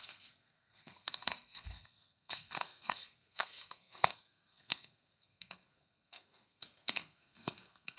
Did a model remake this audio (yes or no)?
yes